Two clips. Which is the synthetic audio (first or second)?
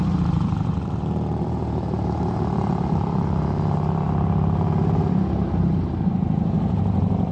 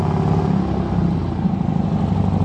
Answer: first